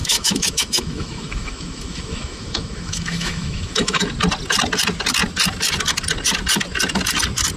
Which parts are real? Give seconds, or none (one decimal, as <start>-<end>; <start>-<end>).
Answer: 4.1-7.6